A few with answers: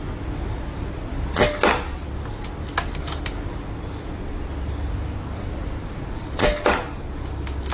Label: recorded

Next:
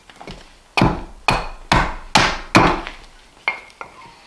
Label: recorded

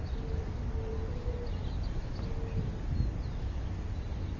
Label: recorded